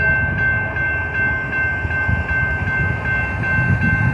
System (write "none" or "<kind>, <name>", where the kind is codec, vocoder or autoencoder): none